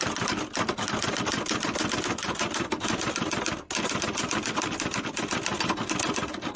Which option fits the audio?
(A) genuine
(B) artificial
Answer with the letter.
A